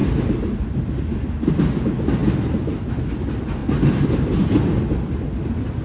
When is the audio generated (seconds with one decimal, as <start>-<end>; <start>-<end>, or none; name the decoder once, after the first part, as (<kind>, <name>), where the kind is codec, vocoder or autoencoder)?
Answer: none